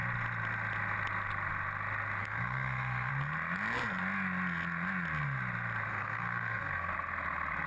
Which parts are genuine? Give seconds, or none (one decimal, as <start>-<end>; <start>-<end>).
0.0-2.2; 3.1-5.9; 6.9-7.7